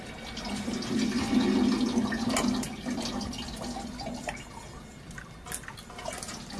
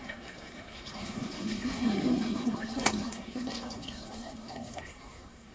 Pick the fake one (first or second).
second